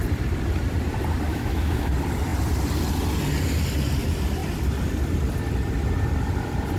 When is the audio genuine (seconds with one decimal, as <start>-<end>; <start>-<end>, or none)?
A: 0.0-1.3; 1.9-6.8